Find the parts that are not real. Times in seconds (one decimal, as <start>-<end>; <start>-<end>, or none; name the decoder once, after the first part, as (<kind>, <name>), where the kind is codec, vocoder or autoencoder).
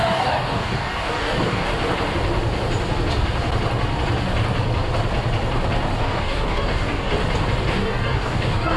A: 0.0-1.7 (codec, DAC); 6.0-7.1; 7.8-8.8